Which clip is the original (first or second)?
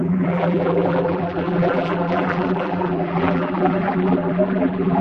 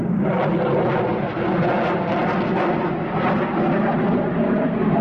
second